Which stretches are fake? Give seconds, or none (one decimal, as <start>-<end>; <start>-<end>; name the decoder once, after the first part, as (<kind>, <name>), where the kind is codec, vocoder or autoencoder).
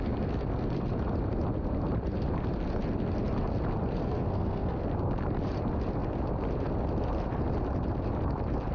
4.0-4.8 (codec, SNAC)